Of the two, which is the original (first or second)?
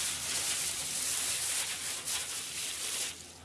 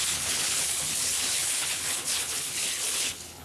first